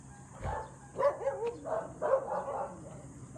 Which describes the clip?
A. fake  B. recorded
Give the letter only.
B